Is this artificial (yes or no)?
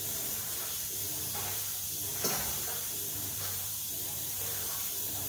yes